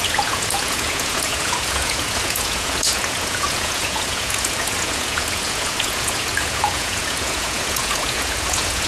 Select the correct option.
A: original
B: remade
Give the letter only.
B